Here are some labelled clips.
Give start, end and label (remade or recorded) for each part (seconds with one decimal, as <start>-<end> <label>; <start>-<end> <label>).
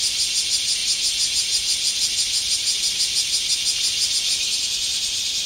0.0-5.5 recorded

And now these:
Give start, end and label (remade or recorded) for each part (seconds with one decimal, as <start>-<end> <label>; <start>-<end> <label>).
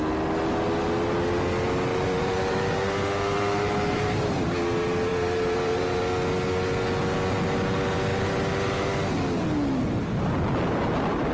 0.0-1.9 recorded; 1.9-4.5 remade; 4.5-5.1 recorded; 5.1-6.0 remade; 6.0-8.1 recorded; 8.1-8.9 remade; 8.9-11.3 recorded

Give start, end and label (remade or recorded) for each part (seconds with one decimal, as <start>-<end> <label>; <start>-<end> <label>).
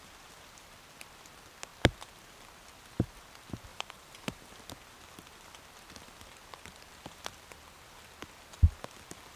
0.0-3.7 recorded; 3.7-4.5 remade; 4.5-9.4 recorded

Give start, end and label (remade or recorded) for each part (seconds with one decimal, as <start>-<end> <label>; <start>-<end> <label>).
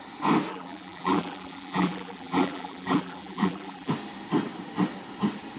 0.0-0.5 recorded; 0.5-3.9 remade; 3.9-5.6 recorded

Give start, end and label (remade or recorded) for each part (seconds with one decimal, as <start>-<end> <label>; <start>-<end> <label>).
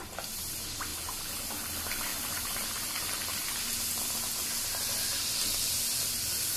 0.0-2.1 recorded; 2.1-3.9 remade; 3.9-6.6 recorded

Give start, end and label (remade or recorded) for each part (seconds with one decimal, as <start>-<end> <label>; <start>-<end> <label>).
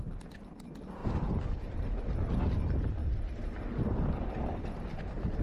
0.0-1.0 recorded; 1.0-2.3 remade; 2.3-3.0 recorded; 3.0-5.0 remade; 5.0-5.4 recorded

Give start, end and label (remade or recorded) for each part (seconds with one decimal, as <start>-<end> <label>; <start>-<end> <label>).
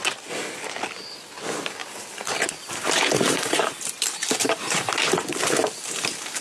0.0-1.8 recorded; 1.8-5.1 remade; 5.1-5.6 recorded; 5.6-6.4 remade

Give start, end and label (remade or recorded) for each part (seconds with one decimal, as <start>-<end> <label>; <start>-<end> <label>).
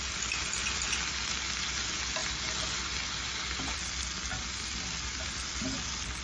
0.0-6.2 recorded